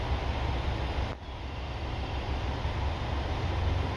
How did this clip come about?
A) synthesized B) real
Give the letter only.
B